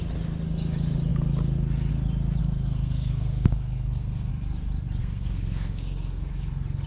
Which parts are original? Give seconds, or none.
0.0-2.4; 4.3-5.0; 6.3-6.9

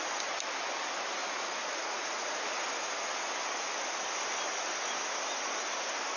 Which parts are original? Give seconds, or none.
0.0-1.2; 2.4-6.2